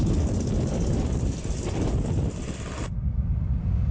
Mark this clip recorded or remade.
recorded